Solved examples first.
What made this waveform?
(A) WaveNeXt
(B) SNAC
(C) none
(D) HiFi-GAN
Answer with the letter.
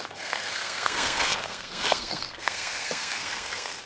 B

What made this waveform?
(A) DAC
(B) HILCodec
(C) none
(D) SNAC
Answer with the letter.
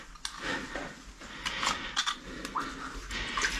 C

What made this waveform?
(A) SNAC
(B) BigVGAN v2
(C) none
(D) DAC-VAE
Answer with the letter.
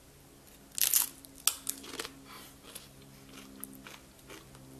C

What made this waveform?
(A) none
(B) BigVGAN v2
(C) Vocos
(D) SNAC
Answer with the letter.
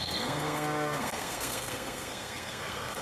D